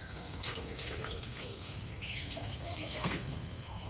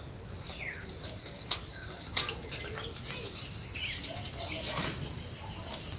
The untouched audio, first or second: second